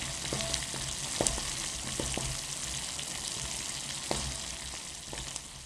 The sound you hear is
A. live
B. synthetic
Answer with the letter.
A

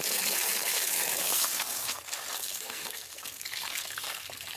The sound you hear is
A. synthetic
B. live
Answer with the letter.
A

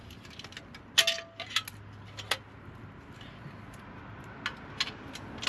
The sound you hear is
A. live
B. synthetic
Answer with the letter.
A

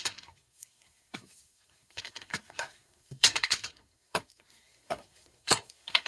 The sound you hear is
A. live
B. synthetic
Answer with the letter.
B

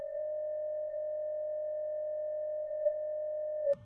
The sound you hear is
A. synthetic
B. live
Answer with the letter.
A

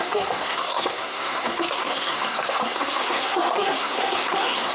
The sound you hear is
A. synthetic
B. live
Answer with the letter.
A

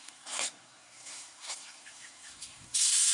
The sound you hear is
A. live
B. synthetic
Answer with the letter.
B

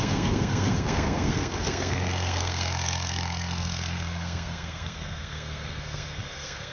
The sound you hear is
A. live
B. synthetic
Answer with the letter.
B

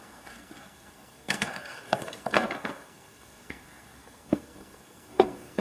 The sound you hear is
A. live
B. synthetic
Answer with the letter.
B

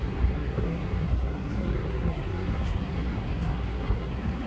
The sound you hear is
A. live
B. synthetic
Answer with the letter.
B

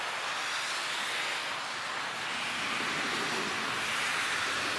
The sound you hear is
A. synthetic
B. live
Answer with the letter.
B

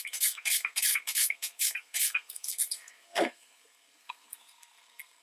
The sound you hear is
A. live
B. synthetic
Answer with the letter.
B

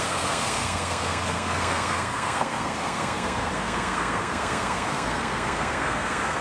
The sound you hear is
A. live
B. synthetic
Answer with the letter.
B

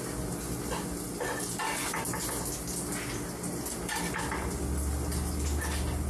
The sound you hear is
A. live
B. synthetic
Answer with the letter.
A